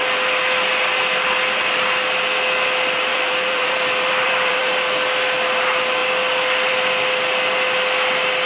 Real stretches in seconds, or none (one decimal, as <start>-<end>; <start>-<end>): 0.0-3.1; 4.7-8.5